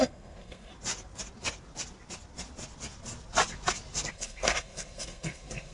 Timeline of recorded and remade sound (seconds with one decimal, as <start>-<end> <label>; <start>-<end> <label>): 0.0-0.7 remade; 0.7-4.1 recorded; 4.1-5.7 remade